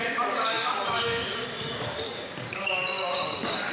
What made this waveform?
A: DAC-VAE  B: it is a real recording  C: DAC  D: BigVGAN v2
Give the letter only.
C